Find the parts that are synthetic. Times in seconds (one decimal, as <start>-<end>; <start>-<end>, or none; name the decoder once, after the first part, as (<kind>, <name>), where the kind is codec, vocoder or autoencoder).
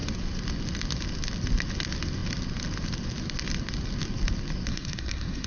4.7-5.5 (codec, SNAC)